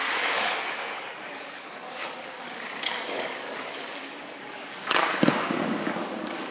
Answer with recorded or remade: remade